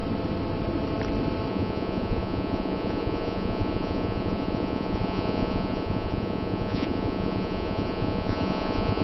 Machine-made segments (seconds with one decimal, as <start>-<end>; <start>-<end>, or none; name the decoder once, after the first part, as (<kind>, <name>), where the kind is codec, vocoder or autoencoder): 1.5-9.0 (vocoder, Vocos)